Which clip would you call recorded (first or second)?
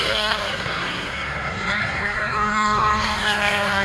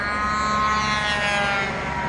second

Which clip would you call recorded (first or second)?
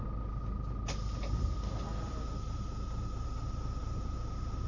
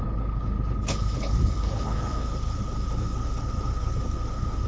first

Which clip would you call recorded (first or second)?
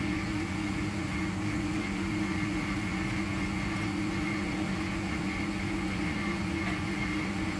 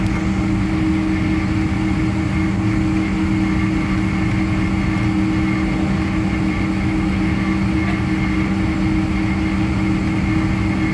second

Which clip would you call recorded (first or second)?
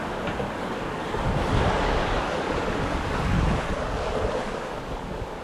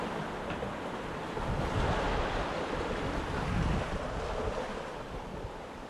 second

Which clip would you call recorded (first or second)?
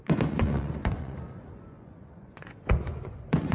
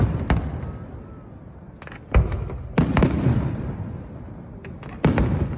second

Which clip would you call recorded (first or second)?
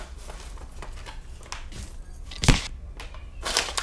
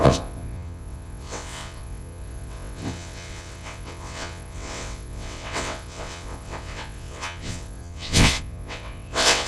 first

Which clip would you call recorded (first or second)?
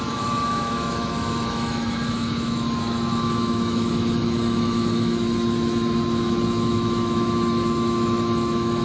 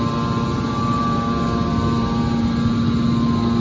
second